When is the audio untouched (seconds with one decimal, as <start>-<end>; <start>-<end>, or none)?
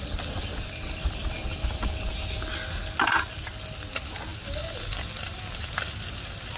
0.0-6.6